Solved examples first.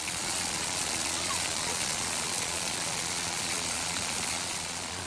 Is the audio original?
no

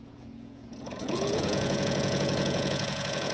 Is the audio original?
no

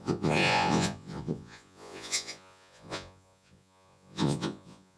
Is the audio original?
no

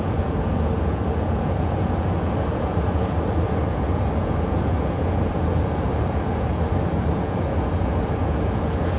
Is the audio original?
no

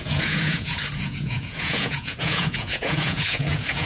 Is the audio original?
no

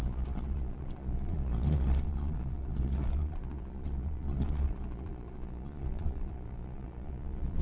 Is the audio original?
no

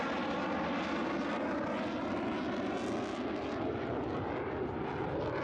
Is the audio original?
yes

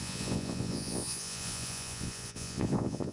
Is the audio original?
no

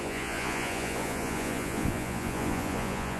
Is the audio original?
no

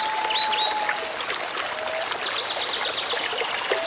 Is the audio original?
yes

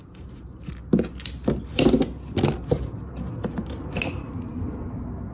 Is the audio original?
yes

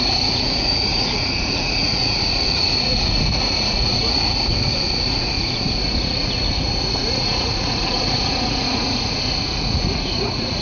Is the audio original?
no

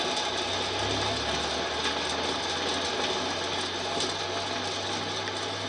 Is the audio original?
yes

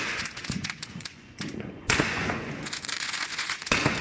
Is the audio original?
no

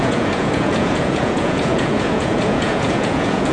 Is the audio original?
no